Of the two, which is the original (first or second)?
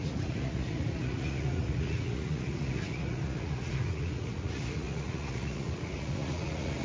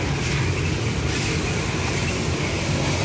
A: second